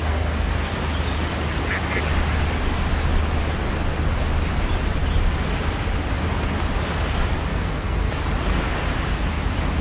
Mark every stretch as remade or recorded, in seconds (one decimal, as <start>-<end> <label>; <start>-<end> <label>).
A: 0.0-0.7 remade; 0.7-7.5 recorded; 7.5-8.1 remade; 8.1-9.8 recorded